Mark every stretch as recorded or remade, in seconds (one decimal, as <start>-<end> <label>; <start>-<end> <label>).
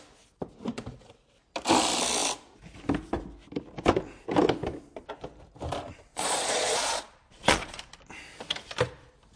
0.0-6.1 recorded; 6.1-7.8 remade; 7.8-9.4 recorded